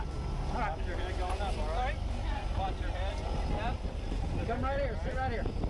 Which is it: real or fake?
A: real